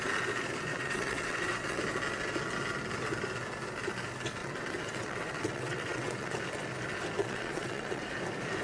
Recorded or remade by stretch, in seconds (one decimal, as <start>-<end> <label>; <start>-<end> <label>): 0.0-0.7 recorded; 0.7-1.8 remade; 1.8-4.4 recorded; 4.4-6.4 remade; 6.4-7.2 recorded; 7.2-8.1 remade; 8.1-8.6 recorded

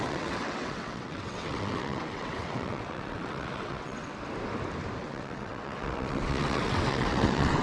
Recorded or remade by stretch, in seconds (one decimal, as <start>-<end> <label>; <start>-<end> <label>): 0.0-4.1 remade; 4.1-5.0 recorded; 5.0-7.6 remade

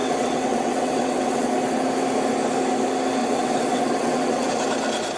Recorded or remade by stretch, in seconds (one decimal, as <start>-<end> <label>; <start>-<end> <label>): 0.0-1.5 remade; 1.5-3.2 recorded; 3.2-4.5 remade; 4.5-5.2 recorded

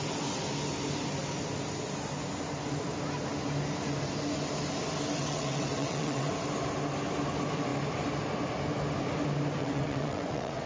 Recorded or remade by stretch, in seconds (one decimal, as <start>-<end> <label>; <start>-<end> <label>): 0.0-5.2 recorded; 5.2-6.3 remade; 6.3-9.6 recorded; 9.6-10.7 remade

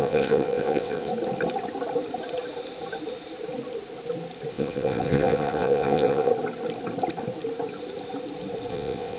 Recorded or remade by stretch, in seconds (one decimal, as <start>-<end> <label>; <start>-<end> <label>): 0.0-1.1 remade; 1.1-4.5 recorded; 4.5-6.3 remade; 6.3-8.7 recorded; 8.7-9.2 remade